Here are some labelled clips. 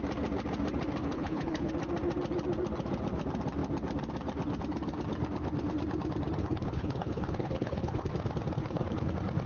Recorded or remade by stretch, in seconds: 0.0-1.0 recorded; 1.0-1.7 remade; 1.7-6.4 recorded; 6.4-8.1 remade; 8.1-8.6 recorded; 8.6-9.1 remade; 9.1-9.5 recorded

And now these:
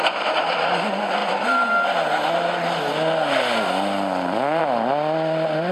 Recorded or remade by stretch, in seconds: 0.0-5.7 recorded

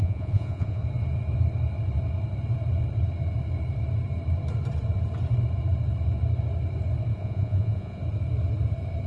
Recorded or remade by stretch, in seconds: 0.0-0.8 remade; 0.8-7.1 recorded; 7.1-8.0 remade; 8.0-9.1 recorded